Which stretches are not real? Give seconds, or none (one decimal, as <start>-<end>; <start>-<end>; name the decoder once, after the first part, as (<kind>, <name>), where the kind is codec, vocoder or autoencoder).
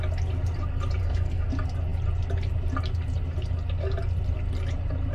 1.0-1.5 (codec, SNAC)